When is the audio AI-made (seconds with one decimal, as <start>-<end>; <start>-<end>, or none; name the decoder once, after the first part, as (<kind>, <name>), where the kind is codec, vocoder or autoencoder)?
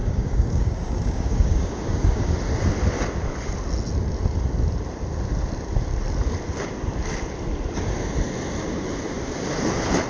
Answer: 0.0-2.3 (codec, DAC)